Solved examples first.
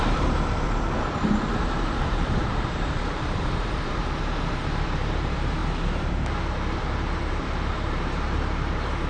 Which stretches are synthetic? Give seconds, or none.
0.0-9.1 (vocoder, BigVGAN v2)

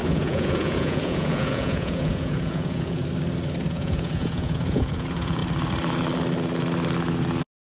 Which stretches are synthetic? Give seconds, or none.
0.0-3.0 (vocoder, Vocos); 3.7-5.4

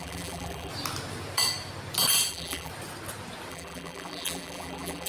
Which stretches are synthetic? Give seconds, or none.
0.0-0.7 (vocoder, BigVGAN v2); 2.3-2.7; 3.5-5.1

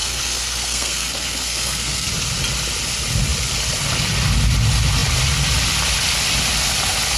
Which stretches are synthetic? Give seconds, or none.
0.0-2.1 (codec, SNAC)

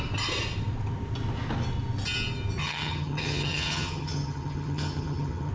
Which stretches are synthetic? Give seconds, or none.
2.6-5.5 (vocoder, HiFi-GAN)